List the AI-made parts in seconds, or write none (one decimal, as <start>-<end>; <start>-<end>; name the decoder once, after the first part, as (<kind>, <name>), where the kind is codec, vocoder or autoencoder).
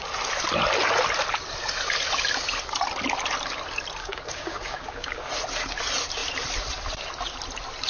4.0-5.3 (codec, DAC)